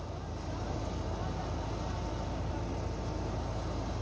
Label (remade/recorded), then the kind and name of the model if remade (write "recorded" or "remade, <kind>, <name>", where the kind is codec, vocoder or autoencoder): recorded